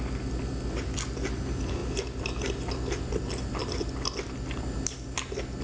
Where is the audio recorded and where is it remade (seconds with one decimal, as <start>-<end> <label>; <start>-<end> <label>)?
0.0-5.6 recorded

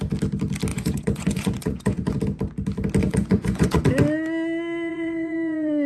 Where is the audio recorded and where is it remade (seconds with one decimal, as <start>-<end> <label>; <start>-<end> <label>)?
0.0-0.7 recorded; 0.7-2.2 remade; 2.2-3.0 recorded; 3.0-3.8 remade; 3.8-4.9 recorded; 4.9-5.9 remade